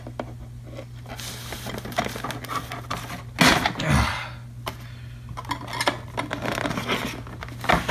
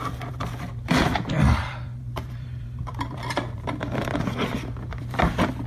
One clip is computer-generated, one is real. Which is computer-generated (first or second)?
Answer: second